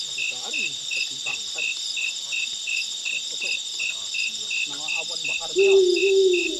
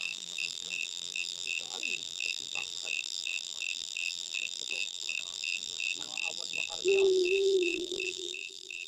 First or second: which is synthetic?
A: second